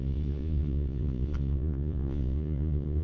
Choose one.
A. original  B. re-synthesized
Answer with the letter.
B